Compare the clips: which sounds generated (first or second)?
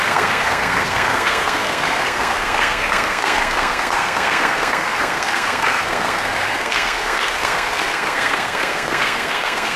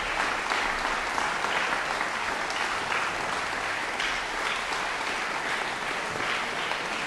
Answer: first